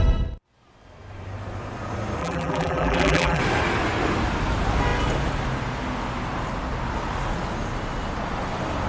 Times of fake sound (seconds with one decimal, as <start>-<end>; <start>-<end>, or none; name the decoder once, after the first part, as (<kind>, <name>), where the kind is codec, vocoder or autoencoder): 2.2-3.4 (vocoder, BigVGAN v2)